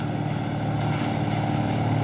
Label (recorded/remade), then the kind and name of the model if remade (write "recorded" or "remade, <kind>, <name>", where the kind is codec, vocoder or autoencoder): recorded